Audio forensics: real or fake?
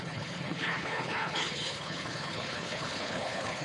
fake